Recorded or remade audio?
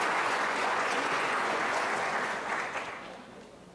remade